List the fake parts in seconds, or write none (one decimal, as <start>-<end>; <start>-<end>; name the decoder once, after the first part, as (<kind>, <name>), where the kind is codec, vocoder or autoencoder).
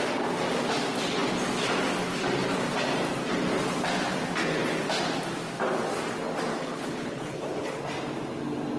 6.5-7.8 (codec, HILCodec)